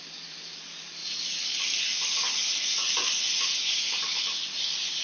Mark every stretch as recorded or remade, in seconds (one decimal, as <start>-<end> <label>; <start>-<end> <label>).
0.0-5.0 recorded